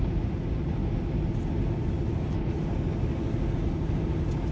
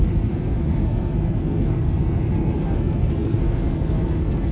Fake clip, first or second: second